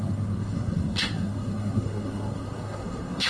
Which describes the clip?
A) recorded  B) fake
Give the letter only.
B